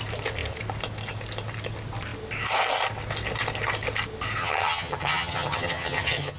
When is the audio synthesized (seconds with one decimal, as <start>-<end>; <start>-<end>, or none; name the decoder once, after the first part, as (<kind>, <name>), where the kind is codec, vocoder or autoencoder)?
4.4-6.4 (vocoder, HiFi-GAN)